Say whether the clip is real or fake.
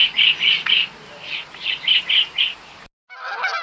real